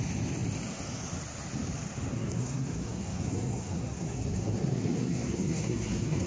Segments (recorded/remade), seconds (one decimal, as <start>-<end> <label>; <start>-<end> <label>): 0.0-2.1 recorded; 2.1-6.3 remade